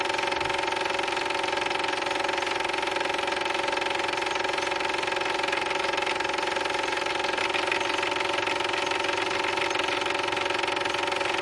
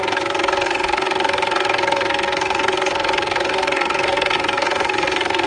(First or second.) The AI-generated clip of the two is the second